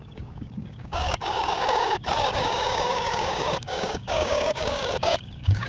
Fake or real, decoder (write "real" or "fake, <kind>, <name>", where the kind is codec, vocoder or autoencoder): fake, codec, DAC